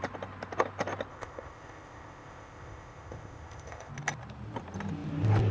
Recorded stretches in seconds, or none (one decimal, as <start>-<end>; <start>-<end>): 0.0-1.1; 3.9-5.5